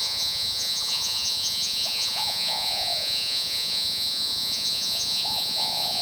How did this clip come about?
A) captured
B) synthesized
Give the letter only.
B